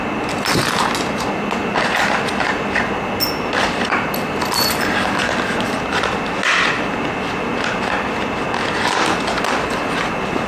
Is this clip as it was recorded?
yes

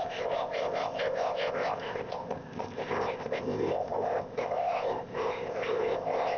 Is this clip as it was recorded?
no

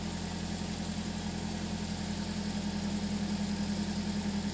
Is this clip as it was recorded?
yes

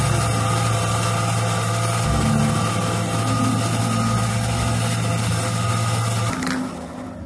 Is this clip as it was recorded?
yes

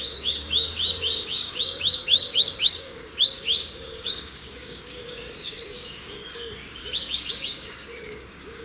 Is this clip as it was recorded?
no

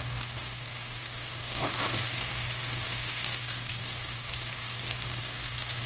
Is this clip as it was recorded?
no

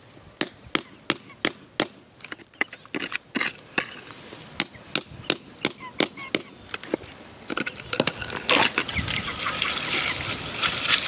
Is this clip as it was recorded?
yes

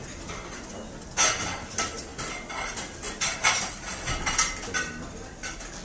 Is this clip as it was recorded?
yes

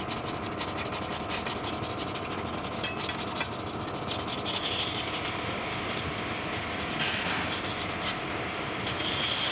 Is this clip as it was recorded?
yes